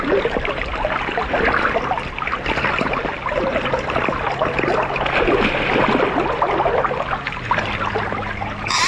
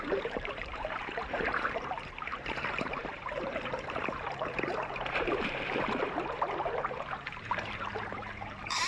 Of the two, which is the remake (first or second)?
second